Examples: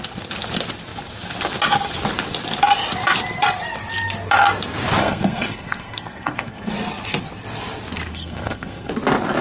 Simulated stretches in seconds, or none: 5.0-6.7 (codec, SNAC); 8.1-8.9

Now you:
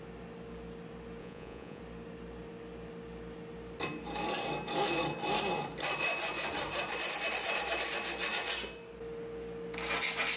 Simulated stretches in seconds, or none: 1.2-1.8 (vocoder, Vocos)

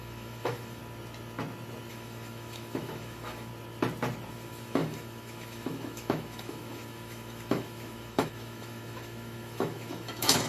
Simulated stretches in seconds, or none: 0.0-0.8 (autoencoder, DAC-VAE); 1.9-3.5; 4.3-10.5

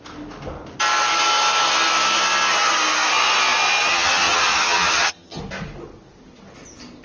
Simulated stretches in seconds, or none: 3.9-5.4 (vocoder, HiFi-GAN)

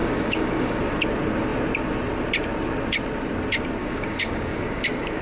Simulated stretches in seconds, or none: 0.0-0.8 (codec, DAC); 3.8-5.2

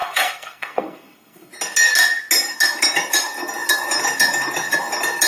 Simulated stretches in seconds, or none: 0.0-1.5 (codec, SNAC)